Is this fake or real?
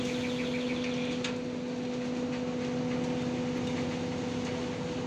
real